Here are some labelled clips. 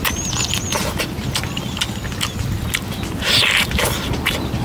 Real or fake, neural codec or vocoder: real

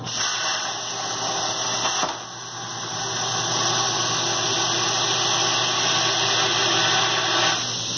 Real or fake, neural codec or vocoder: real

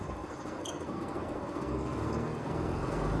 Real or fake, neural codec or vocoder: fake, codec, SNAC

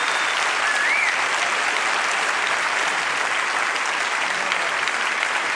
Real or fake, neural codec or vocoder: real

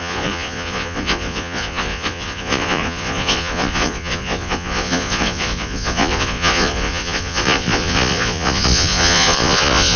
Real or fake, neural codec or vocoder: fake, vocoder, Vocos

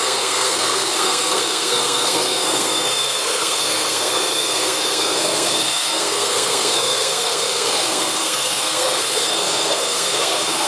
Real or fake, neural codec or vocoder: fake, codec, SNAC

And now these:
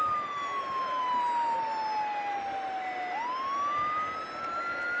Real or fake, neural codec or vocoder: real